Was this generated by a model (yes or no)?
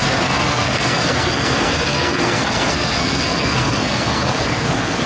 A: yes